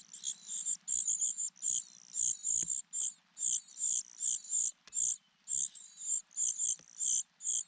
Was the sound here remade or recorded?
recorded